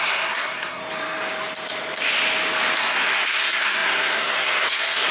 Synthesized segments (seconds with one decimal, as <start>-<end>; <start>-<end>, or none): 0.0-0.8; 2.8-5.1